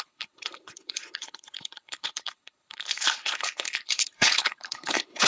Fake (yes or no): yes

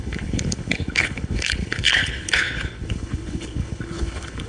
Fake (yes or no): yes